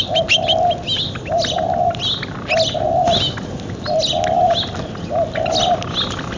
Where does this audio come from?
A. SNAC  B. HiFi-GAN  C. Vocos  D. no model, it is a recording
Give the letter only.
D